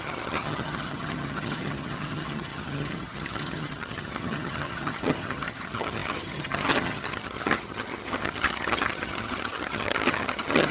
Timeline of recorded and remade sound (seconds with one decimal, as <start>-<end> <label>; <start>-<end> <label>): 0.0-10.7 remade